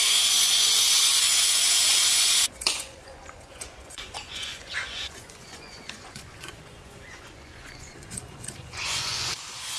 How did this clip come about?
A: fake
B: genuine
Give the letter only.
A